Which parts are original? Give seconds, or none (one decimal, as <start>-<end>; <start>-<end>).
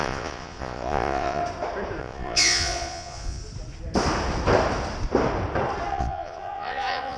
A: 1.4-2.0; 3.4-5.9